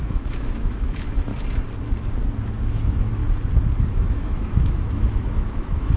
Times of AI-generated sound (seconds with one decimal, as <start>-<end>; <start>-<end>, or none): 0.0-1.3; 2.7-3.2; 3.9-6.0